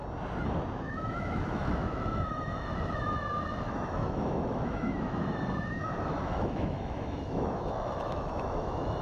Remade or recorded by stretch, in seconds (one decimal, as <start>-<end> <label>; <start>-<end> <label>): 0.0-0.8 recorded; 0.8-9.0 remade